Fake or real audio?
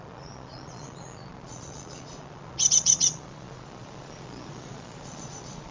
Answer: fake